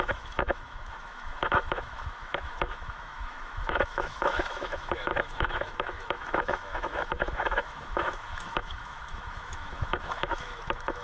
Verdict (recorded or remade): remade